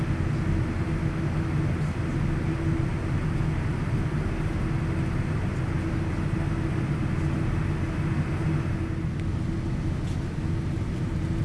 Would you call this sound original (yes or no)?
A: yes